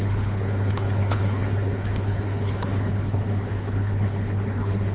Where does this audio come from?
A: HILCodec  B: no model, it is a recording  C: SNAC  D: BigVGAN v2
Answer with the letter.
A